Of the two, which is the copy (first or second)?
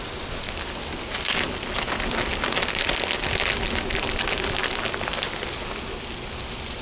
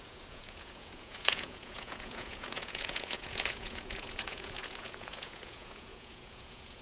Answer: second